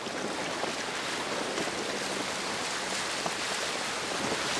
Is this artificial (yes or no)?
no